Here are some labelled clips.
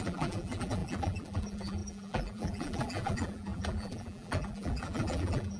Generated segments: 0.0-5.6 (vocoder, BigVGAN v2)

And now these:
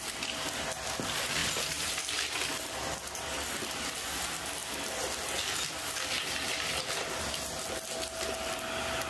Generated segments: 1.4-2.0 (vocoder, BigVGAN v2)

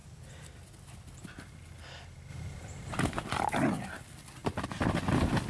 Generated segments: 2.3-3.0 (vocoder, BigVGAN v2)

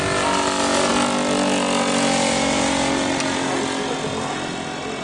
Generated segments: none